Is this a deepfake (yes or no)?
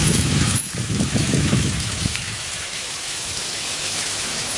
yes